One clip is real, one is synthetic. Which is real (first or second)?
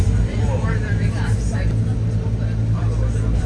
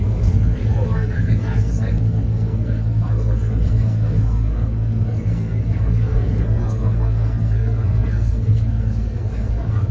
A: first